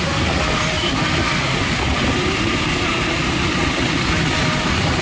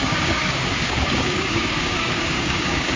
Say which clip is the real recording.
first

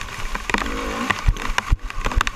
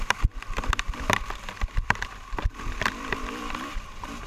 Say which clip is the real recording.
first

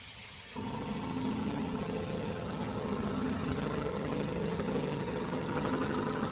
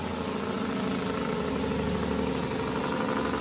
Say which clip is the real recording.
second